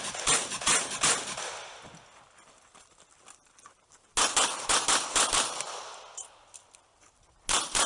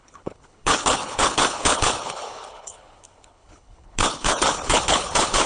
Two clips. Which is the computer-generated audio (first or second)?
second